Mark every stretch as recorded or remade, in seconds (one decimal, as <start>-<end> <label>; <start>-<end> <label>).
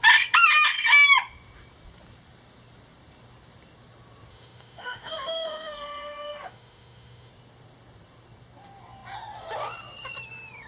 0.0-4.3 recorded; 4.3-7.3 remade; 7.3-10.7 recorded